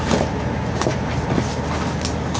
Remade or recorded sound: recorded